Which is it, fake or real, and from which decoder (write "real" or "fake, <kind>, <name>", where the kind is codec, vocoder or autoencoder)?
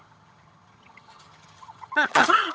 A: fake, vocoder, HiFi-GAN